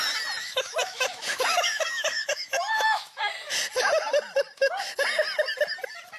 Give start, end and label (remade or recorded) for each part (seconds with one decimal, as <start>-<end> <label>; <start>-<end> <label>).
0.0-0.4 recorded; 0.4-3.3 remade; 3.3-6.2 recorded